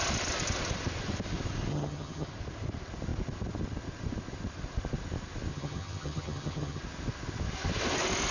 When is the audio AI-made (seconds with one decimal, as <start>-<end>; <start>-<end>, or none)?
1.7-2.3; 5.5-6.8